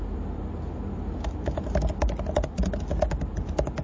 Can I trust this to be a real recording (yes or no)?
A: yes